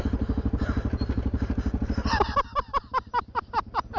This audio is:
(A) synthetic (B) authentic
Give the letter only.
B